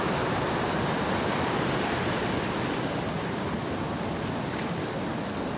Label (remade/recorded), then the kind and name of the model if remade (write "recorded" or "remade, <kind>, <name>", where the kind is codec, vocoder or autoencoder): recorded